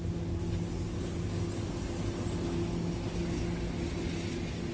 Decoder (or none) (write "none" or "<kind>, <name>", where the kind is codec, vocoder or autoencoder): none